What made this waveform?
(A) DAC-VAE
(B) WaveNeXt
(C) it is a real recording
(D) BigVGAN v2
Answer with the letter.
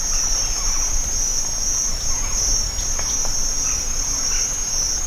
C